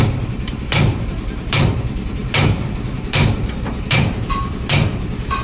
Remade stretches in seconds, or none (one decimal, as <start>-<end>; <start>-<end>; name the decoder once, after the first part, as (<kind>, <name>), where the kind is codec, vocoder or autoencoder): 0.0-5.4 (vocoder, BigVGAN v2)